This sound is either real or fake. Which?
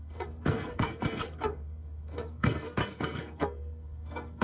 fake